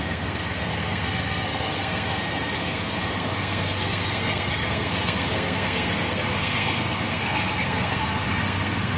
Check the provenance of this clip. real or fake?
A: fake